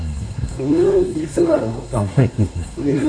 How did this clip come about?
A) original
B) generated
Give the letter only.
B